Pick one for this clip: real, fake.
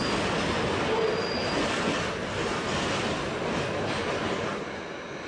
real